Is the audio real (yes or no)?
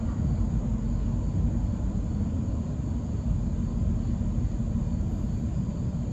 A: yes